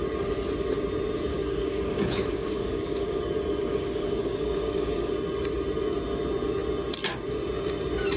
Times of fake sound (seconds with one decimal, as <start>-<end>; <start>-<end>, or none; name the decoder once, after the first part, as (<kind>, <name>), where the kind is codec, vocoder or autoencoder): 1.3-3.2 (codec, DAC); 3.6-5.1